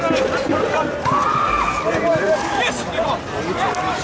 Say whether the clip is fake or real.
real